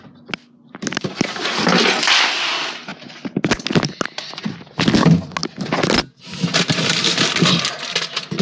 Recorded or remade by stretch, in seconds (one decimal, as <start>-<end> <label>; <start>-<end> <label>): 0.0-8.4 recorded